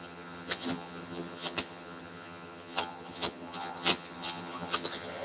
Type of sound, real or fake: fake